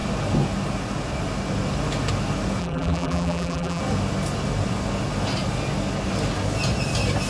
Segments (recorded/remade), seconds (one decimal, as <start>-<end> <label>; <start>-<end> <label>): 0.0-2.6 recorded; 2.6-3.8 remade; 3.8-7.3 recorded